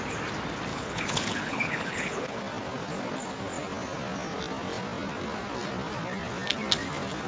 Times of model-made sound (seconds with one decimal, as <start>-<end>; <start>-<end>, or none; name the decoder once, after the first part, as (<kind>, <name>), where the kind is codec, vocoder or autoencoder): 0.7-2.4 (codec, HILCodec)